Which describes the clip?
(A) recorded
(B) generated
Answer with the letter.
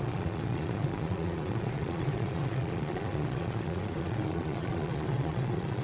B